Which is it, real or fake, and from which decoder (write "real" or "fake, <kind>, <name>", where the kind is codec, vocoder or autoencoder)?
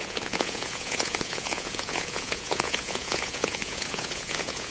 fake, vocoder, Vocos